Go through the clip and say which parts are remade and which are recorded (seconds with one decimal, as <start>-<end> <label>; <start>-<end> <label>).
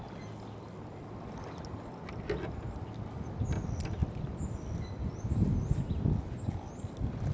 0.0-7.3 recorded